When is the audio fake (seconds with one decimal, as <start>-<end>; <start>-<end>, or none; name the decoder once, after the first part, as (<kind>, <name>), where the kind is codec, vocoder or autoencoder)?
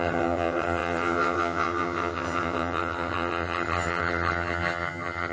0.0-5.3 (vocoder, HiFi-GAN)